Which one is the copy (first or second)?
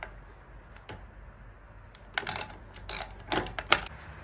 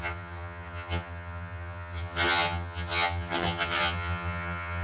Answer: second